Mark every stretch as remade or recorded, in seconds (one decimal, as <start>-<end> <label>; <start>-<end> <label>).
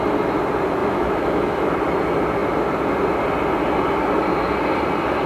0.0-0.8 recorded; 0.8-1.7 remade; 1.7-5.3 recorded